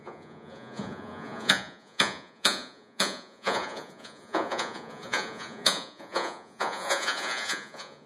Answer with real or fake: fake